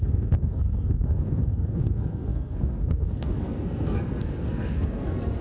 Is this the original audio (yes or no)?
no